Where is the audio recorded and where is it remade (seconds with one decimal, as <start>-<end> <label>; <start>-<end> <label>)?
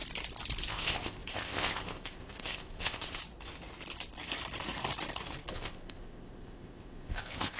0.0-0.7 recorded; 0.7-3.2 remade; 3.2-5.5 recorded; 5.5-7.6 remade